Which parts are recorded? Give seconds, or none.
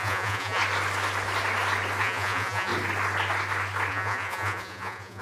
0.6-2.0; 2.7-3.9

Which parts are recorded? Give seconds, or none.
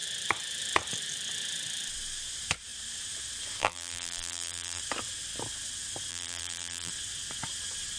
0.0-3.6; 4.8-6.1; 6.9-8.0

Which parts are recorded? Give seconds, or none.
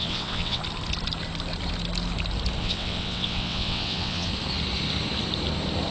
0.6-2.6; 4.3-5.9